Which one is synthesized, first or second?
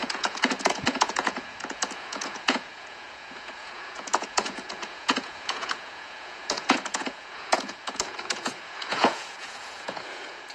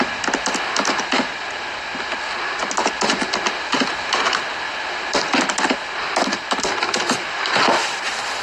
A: first